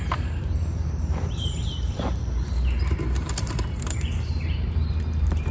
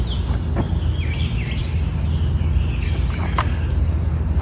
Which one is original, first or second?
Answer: second